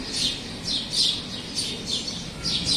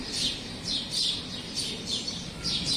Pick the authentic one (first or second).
first